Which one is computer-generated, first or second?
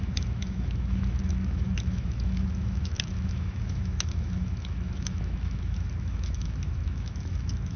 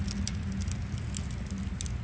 first